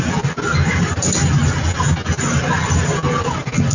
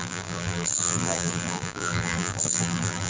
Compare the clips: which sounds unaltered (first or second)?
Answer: first